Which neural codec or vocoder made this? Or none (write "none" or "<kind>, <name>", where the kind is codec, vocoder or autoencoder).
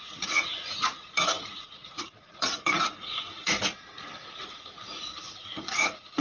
vocoder, Vocos